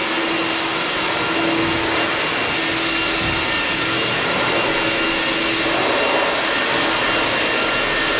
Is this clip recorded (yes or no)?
yes